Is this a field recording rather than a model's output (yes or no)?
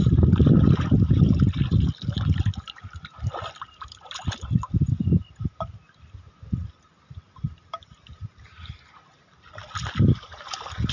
yes